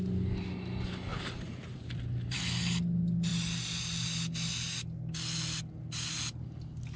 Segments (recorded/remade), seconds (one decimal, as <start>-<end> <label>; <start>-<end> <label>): 0.0-1.1 recorded; 1.1-2.4 remade; 2.4-7.0 recorded